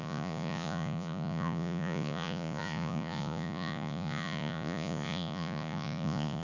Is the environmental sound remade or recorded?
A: remade